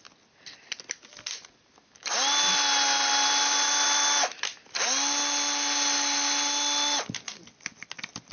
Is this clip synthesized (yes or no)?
no